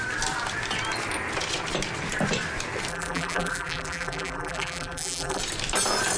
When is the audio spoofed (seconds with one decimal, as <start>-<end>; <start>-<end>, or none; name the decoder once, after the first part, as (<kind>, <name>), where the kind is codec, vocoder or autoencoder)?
2.9-5.4 (vocoder, BigVGAN v2)